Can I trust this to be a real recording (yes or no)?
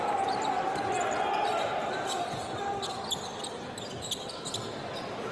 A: yes